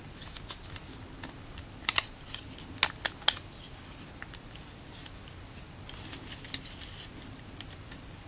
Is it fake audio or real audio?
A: real